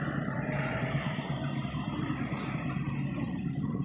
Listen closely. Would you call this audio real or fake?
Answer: fake